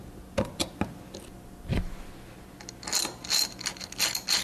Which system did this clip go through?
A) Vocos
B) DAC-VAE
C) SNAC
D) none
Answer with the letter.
D